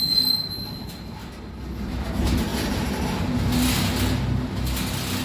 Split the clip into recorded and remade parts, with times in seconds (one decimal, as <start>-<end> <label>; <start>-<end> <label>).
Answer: 0.0-5.2 recorded